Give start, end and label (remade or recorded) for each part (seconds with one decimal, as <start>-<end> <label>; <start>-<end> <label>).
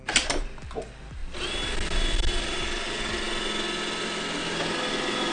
0.0-5.3 recorded